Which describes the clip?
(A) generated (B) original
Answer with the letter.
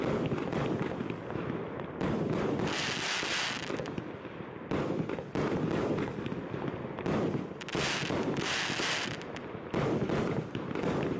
B